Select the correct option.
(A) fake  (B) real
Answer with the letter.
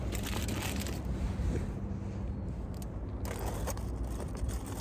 B